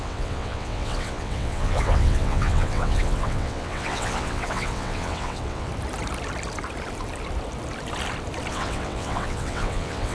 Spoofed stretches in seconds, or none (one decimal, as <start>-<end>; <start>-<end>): 0.0-5.7; 8.5-10.1